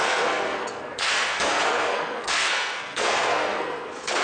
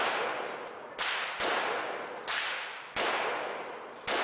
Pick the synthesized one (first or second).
first